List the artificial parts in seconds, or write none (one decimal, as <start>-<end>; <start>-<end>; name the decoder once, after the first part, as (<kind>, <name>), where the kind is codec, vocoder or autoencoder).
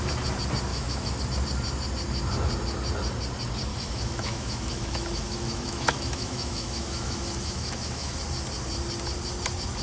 0.7-1.2 (autoencoder, DAC-VAE); 3.7-8.2